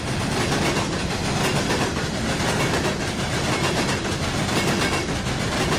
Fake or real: real